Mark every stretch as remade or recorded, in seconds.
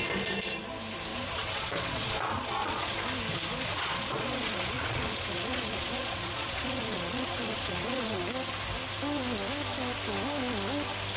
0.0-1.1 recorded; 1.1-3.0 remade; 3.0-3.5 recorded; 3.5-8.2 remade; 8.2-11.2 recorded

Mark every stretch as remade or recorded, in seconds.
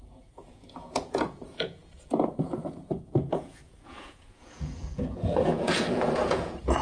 0.0-6.8 remade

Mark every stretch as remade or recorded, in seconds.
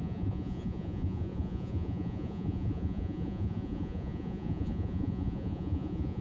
0.0-6.2 remade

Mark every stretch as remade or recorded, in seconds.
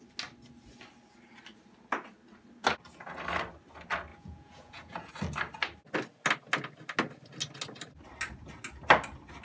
0.0-4.1 recorded; 4.1-5.1 remade; 5.1-9.4 recorded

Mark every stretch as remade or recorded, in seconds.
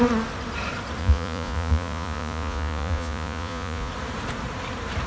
0.0-1.0 recorded; 1.0-3.9 remade; 3.9-5.1 recorded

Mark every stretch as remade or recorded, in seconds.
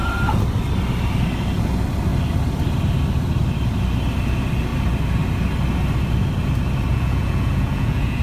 0.0-6.9 recorded; 6.9-8.2 remade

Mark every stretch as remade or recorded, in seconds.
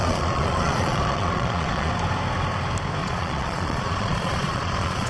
0.0-1.9 remade; 1.9-3.0 recorded; 3.0-5.1 remade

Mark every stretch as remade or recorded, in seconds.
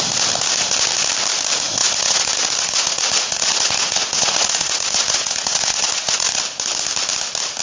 0.0-1.8 recorded; 1.8-6.4 remade; 6.4-7.6 recorded